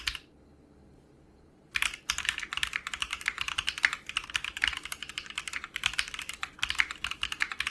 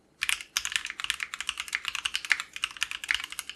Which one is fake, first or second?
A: first